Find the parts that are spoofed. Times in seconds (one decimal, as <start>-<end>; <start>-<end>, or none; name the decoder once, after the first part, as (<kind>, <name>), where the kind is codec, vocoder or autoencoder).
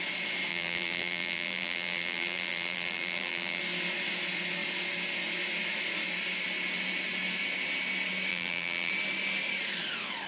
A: 0.5-3.6 (vocoder, BigVGAN v2); 8.3-8.9